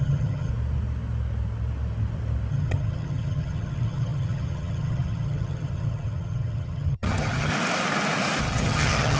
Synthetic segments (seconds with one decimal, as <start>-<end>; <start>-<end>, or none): 0.0-0.5; 2.5-7.5; 8.4-9.2